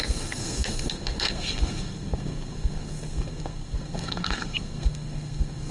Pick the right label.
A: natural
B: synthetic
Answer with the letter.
B